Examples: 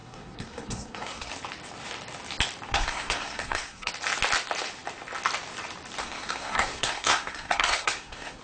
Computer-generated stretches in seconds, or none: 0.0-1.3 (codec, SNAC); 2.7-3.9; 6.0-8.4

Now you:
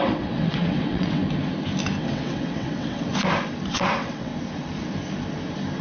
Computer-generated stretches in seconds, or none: 0.0-1.2 (vocoder, WaveNeXt); 2.0-3.1; 3.7-4.3

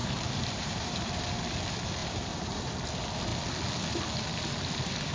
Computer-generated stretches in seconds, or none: 0.0-1.0 (vocoder, BigVGAN v2); 2.0-2.8

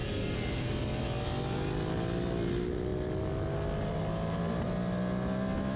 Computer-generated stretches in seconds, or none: 0.0-0.7 (codec, SNAC)

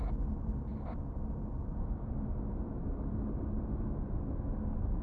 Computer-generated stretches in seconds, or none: 0.7-3.7 (vocoder, BigVGAN v2)

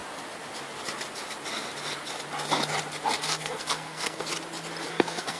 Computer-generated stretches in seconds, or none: 3.2-4.3 (codec, SNAC); 4.9-5.4

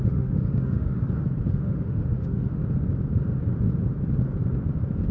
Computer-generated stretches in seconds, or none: 0.0-1.0 (autoencoder, DAC-VAE); 1.5-2.6

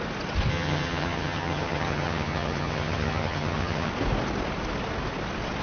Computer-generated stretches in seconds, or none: 0.5-3.9 (vocoder, HiFi-GAN)